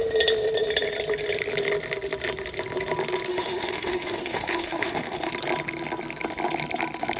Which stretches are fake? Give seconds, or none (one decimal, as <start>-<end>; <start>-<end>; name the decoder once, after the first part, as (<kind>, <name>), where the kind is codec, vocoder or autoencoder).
3.3-5.3 (autoencoder, DAC-VAE)